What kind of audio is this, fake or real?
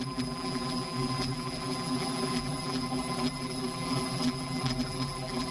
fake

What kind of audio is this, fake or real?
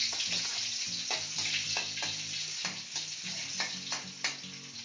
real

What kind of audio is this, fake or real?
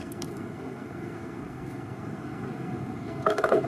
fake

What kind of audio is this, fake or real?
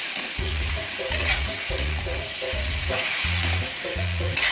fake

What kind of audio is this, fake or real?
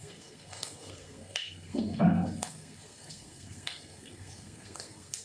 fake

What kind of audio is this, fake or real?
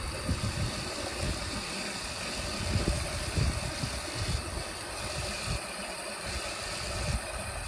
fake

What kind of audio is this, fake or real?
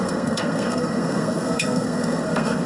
fake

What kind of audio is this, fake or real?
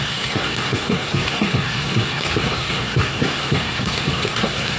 fake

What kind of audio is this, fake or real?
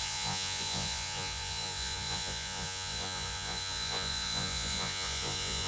fake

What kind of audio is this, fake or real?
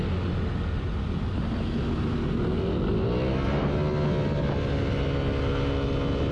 real